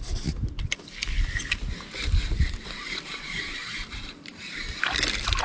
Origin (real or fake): real